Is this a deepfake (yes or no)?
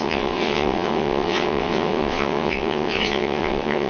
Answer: yes